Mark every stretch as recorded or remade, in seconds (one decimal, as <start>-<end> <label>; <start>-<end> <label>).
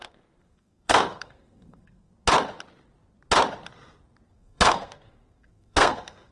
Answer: 0.0-2.1 remade; 2.1-4.3 recorded; 4.3-6.3 remade